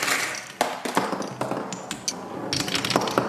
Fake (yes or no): no